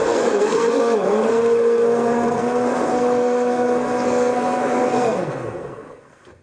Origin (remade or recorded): remade